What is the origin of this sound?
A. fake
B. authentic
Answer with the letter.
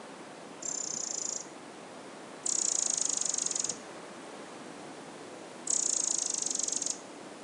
B